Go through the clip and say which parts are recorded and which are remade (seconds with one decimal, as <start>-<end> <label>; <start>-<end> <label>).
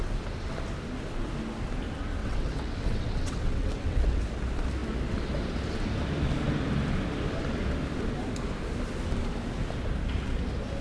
0.0-2.2 recorded; 2.2-4.2 remade; 4.2-10.8 recorded